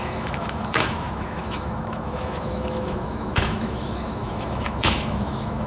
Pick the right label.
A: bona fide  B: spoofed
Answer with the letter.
B